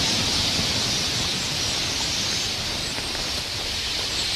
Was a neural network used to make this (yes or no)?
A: no